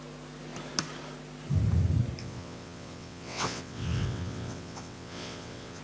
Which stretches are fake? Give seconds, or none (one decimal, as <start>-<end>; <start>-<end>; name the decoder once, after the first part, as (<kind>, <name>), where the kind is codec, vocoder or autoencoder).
2.2-5.8 (vocoder, WaveNeXt)